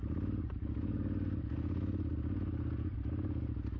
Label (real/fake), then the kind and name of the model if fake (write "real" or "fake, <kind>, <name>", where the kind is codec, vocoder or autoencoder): real